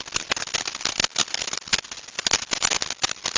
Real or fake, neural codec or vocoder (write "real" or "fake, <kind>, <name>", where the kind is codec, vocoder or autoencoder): real